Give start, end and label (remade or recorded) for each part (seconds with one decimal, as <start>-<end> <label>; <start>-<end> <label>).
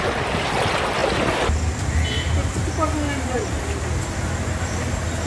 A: 0.0-5.3 recorded